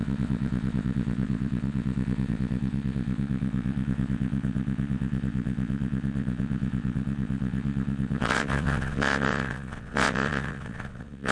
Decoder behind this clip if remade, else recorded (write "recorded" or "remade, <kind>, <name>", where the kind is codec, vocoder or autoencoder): remade, vocoder, WaveNeXt